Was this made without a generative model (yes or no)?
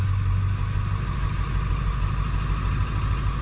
yes